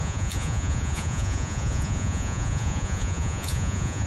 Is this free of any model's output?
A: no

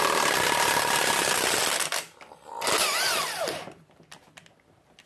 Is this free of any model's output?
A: yes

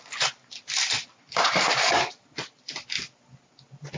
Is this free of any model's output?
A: yes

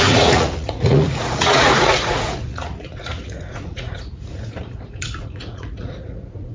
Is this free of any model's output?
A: no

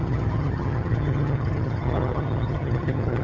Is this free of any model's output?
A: no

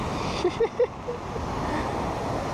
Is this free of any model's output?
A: yes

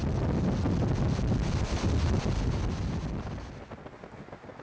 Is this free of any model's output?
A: yes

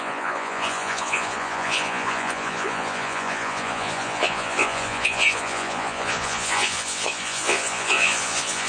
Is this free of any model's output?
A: no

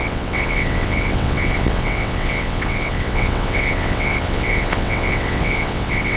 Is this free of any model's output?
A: no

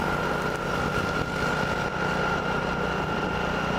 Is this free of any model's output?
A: yes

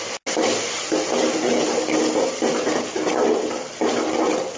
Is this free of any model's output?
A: yes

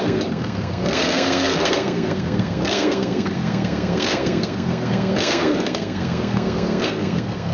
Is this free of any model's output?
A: no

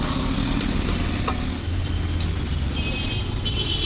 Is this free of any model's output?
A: yes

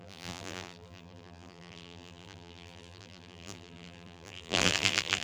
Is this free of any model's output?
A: no